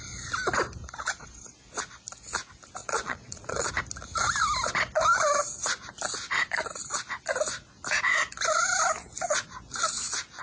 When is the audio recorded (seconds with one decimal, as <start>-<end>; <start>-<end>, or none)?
0.0-2.8; 3.7-10.4